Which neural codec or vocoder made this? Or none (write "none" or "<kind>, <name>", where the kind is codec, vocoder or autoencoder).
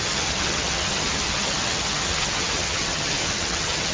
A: vocoder, HiFi-GAN